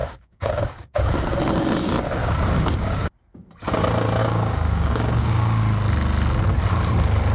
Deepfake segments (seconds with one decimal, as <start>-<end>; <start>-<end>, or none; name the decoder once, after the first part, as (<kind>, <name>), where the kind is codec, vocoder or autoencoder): 0.0-1.1 (codec, DAC); 2.2-3.1; 4.2-5.6